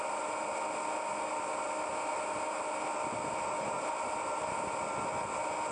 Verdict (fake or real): real